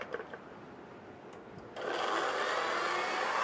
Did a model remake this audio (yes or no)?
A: no